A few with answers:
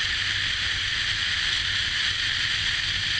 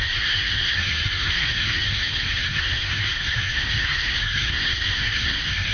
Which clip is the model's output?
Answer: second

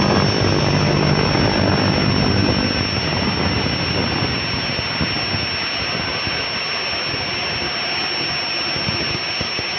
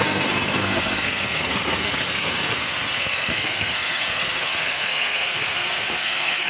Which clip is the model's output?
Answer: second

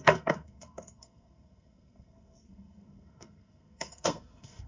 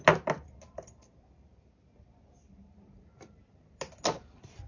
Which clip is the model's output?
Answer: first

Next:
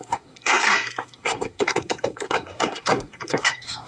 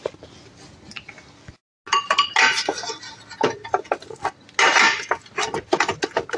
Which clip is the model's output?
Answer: first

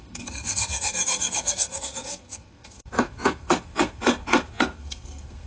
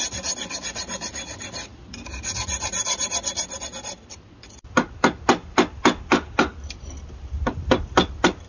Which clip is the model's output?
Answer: first